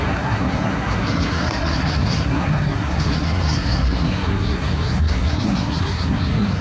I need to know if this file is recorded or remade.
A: remade